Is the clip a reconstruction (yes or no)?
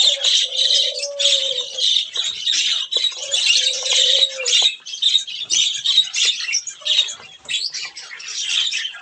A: yes